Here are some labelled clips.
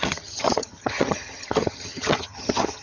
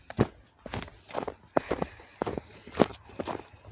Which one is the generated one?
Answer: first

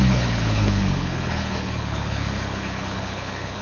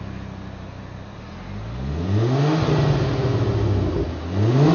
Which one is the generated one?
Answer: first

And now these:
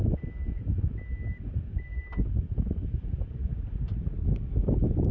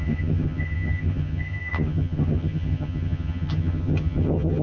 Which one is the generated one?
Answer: second